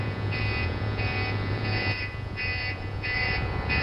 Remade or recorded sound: remade